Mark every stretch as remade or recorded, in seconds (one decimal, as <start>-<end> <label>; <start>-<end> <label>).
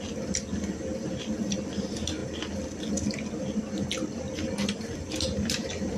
0.0-6.0 recorded